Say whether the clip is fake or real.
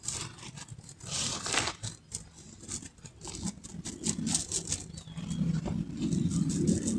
real